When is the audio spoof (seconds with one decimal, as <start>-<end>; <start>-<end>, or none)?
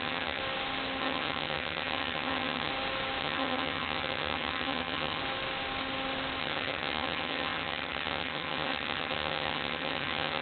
0.0-0.4; 1.0-2.7; 3.2-5.2; 6.4-10.4